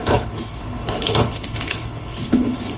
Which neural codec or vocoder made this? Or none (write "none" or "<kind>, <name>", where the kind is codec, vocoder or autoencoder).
codec, HILCodec